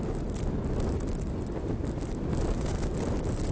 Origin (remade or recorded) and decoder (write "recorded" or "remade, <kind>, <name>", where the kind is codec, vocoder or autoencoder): recorded